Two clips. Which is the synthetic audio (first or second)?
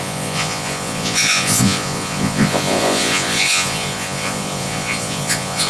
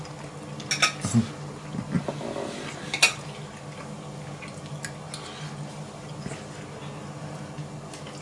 first